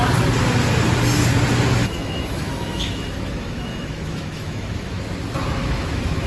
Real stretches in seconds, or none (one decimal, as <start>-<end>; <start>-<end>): 0.0-1.8; 5.0-5.6